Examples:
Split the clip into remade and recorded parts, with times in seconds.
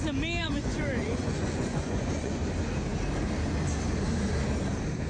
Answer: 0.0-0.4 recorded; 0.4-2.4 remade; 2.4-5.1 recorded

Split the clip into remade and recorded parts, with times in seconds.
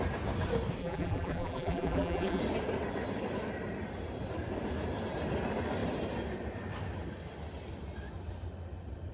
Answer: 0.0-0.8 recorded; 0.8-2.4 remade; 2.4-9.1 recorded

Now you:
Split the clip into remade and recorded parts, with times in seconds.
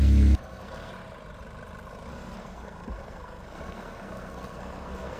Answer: 0.0-0.9 remade; 0.9-2.1 recorded; 2.1-5.2 remade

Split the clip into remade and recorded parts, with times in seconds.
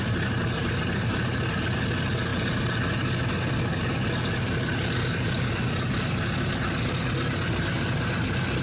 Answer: 0.0-8.6 recorded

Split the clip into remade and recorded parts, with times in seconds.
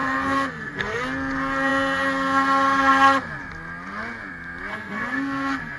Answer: 0.0-1.0 remade; 1.0-4.7 recorded; 4.7-5.8 remade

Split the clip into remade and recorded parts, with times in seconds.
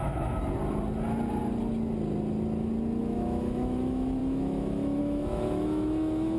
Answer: 0.0-0.4 remade; 0.4-3.0 recorded; 3.0-6.4 remade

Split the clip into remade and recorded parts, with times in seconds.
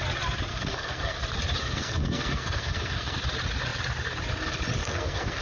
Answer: 0.0-0.5 recorded; 0.5-1.2 remade; 1.2-1.6 recorded; 1.6-3.2 remade; 3.2-4.8 recorded; 4.8-5.4 remade